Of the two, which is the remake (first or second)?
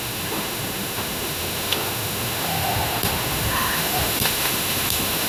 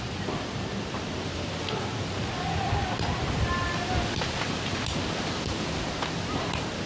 first